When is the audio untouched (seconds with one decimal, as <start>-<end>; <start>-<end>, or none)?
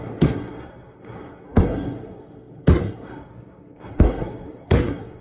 none